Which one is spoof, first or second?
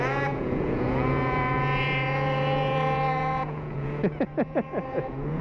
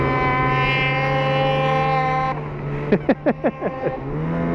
first